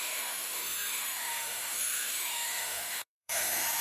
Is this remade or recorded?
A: remade